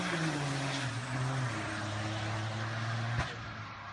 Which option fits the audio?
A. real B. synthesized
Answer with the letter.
A